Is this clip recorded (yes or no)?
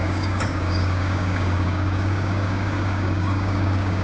no